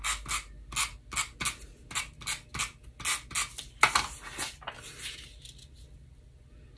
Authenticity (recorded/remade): recorded